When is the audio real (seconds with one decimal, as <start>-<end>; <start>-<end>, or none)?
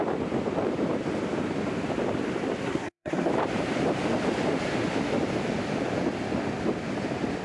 0.0-2.6; 3.3-7.4